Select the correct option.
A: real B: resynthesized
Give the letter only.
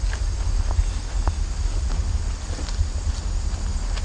A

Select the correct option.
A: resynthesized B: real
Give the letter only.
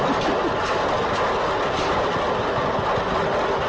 B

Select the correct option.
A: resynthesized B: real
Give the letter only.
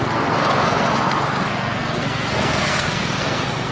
A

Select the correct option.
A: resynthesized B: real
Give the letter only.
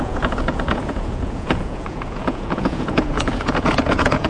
A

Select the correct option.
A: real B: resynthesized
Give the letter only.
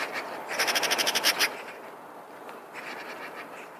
A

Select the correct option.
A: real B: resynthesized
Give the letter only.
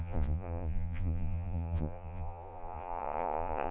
B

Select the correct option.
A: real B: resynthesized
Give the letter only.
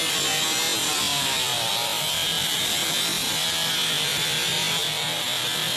A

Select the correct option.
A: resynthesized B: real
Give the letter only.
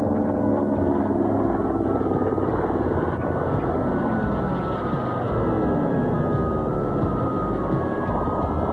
B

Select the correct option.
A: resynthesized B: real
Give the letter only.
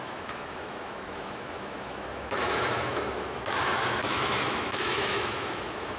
A